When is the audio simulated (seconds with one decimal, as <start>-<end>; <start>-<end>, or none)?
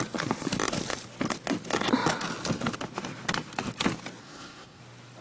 4.2-4.8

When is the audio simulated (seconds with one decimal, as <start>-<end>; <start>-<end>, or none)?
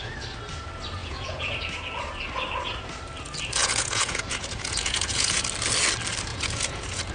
1.0-1.5; 3.6-5.4; 6.3-7.1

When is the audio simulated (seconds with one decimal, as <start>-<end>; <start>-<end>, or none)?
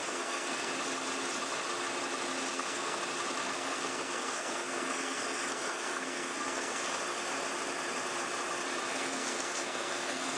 0.0-0.7; 2.5-3.0; 3.4-7.0; 8.9-10.4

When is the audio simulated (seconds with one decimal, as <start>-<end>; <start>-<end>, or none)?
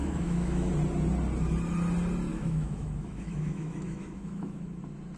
0.0-0.7; 2.3-4.8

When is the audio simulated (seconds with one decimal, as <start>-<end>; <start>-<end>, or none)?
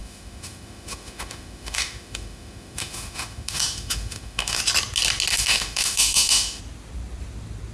0.0-4.6; 5.3-6.6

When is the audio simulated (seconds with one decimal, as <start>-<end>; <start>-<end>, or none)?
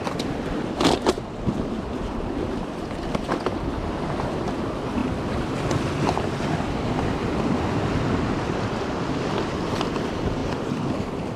none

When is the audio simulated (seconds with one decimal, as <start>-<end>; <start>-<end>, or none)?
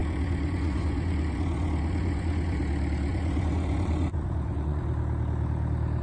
0.0-2.6; 3.1-4.8